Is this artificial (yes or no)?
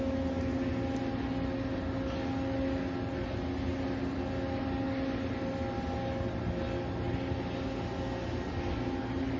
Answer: no